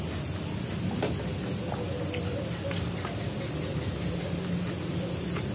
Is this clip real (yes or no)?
yes